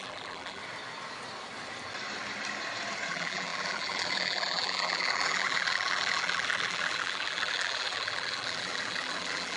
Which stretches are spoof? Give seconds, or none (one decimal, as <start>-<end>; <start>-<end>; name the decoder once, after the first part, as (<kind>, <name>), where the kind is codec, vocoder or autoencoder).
0.0-0.6 (vocoder, BigVGAN v2); 3.1-9.6